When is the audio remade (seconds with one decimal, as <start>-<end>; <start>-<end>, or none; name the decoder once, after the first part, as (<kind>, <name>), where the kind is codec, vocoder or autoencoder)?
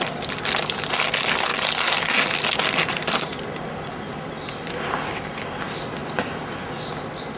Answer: 1.5-5.4 (vocoder, BigVGAN v2)